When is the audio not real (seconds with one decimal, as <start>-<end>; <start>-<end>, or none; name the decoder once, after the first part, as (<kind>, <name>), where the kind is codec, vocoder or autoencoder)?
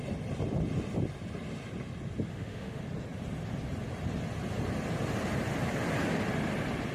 2.3-2.8 (autoencoder, DAC-VAE)